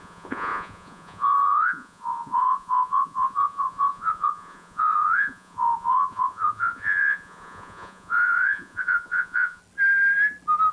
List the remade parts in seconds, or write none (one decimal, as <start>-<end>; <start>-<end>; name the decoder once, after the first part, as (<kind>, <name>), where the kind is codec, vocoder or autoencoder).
0.0-9.6 (vocoder, Vocos)